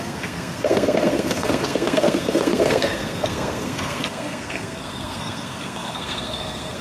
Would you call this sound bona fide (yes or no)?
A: no